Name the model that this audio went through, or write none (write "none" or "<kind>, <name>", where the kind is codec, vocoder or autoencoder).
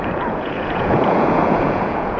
vocoder, Vocos